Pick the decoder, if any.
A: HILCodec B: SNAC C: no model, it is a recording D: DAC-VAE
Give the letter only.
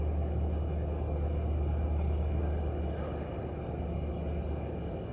C